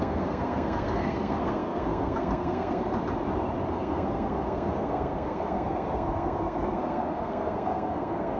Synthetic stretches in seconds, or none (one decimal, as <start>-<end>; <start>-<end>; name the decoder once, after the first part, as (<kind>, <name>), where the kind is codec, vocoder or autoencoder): 0.0-2.8 (codec, SNAC); 3.7-8.4